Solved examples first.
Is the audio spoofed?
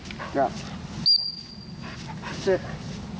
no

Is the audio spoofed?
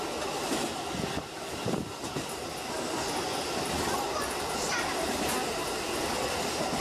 no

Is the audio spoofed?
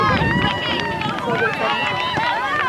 no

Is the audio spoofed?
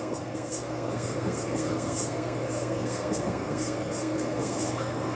yes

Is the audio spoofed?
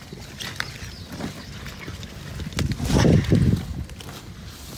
no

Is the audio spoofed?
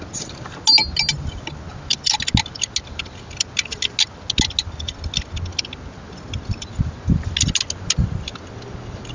no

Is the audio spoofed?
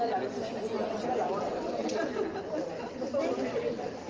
no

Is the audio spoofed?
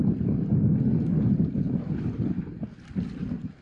no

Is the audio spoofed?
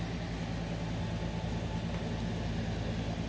no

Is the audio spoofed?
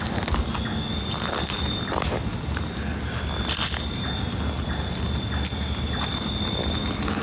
no